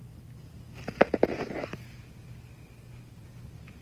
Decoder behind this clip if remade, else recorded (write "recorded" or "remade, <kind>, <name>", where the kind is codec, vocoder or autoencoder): recorded